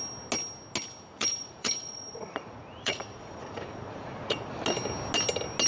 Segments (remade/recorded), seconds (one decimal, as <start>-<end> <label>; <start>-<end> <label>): 0.0-1.1 recorded; 1.1-4.5 remade; 4.5-5.7 recorded